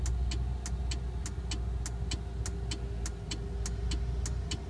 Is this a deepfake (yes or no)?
no